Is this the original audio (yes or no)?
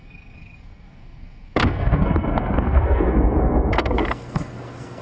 no